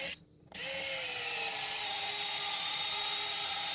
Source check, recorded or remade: recorded